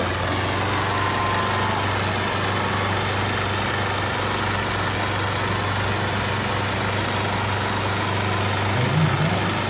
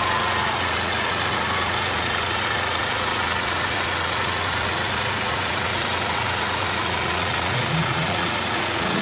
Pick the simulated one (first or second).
second